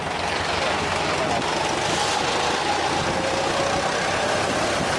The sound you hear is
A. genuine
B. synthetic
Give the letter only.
A